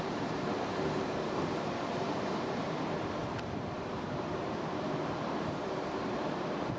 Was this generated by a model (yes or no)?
yes